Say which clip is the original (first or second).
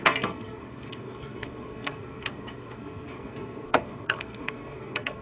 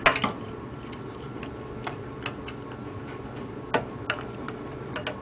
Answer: second